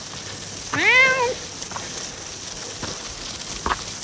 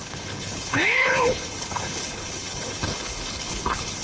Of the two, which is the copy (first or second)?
second